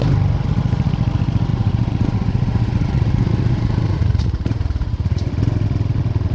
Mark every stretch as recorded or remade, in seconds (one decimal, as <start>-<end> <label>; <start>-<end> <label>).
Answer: 0.0-1.5 recorded; 1.5-5.3 remade; 5.3-6.3 recorded